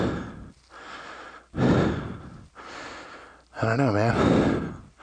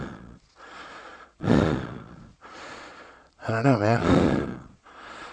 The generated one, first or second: second